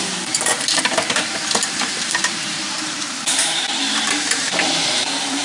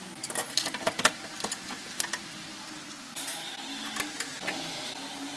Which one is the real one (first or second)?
second